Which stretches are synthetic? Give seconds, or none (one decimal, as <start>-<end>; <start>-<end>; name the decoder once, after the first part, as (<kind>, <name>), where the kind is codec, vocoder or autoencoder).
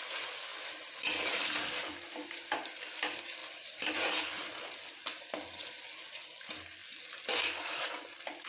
none